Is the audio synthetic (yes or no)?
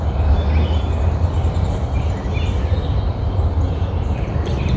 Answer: no